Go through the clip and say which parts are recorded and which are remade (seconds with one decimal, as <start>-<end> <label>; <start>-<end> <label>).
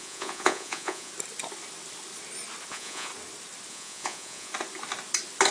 0.0-1.1 remade; 1.1-2.7 recorded; 2.7-3.1 remade; 3.1-3.7 recorded; 3.7-4.5 remade; 4.5-5.5 recorded